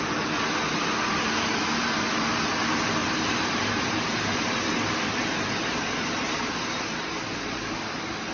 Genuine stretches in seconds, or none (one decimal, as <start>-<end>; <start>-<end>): 0.0-3.0; 6.9-8.3